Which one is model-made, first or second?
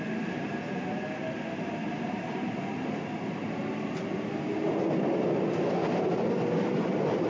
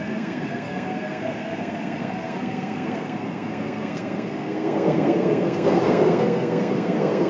second